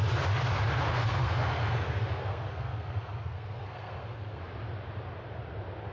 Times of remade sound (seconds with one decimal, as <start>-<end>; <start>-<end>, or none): 0.9-4.4